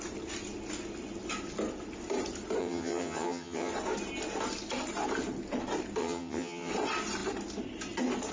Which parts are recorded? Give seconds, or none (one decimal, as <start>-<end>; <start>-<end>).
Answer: 0.0-2.6; 3.7-6.0; 6.7-8.3